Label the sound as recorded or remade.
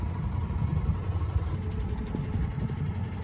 recorded